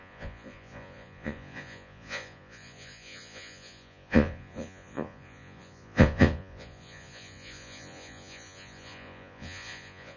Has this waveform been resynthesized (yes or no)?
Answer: yes